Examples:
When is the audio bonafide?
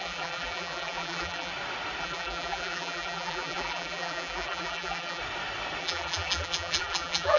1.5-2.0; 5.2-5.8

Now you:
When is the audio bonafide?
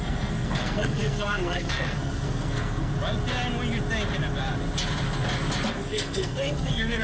2.9-5.7